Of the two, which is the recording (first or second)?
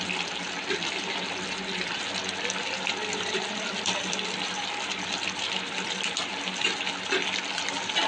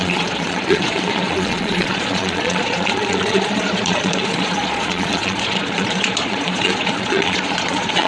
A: first